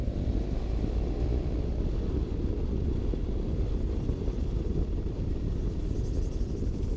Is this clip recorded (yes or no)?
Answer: yes